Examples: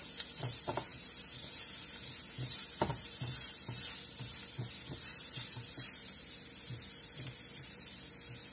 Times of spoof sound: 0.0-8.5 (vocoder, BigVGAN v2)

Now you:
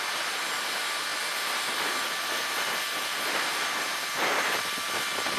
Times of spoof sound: none

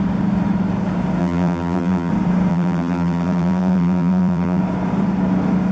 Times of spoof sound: 1.2-2.1 (vocoder, BigVGAN v2); 2.5-4.6

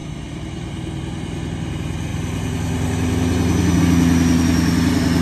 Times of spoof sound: none